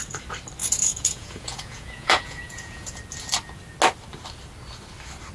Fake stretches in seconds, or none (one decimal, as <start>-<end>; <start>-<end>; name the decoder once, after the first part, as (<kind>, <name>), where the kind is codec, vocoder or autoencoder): 0.6-3.0 (vocoder, Vocos)